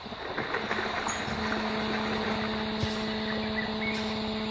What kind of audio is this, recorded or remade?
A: recorded